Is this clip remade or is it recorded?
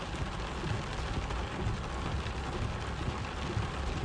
recorded